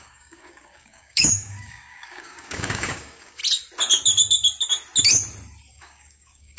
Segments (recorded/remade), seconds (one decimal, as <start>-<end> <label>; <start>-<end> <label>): 0.0-3.4 remade; 3.4-5.7 recorded; 5.7-6.6 remade